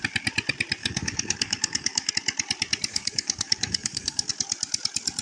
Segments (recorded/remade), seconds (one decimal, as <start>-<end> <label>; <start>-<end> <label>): 0.0-0.8 recorded; 0.8-2.1 remade; 2.1-2.9 recorded; 2.9-4.3 remade; 4.3-5.2 recorded